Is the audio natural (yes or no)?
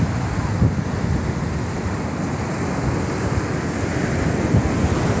yes